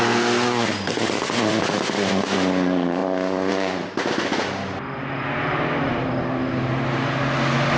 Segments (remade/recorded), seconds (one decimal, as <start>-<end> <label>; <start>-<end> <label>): 0.0-7.8 recorded